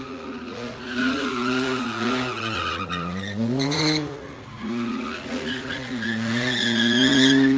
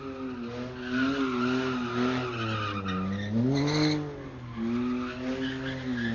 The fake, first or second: first